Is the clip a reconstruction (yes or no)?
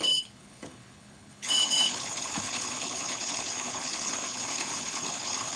yes